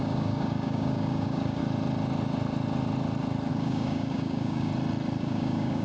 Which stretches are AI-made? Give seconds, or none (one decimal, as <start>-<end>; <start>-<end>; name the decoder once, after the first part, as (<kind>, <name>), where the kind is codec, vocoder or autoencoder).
0.0-1.6 (codec, DAC); 3.5-4.7; 5.2-5.8